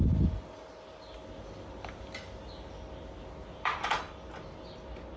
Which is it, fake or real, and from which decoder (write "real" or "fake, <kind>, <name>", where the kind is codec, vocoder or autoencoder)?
real